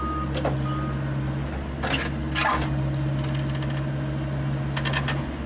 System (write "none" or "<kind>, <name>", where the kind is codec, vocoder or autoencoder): none